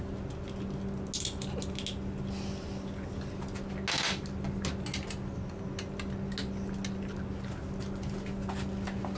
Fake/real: real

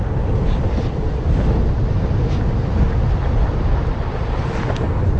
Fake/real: fake